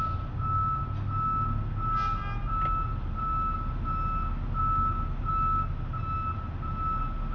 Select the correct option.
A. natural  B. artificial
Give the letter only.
A